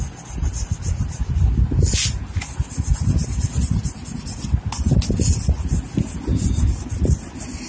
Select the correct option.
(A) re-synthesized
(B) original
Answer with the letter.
B